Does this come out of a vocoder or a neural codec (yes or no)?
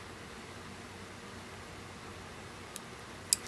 no